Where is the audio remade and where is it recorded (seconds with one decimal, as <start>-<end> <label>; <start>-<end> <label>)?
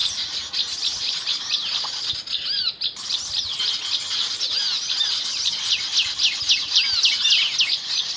0.0-8.2 recorded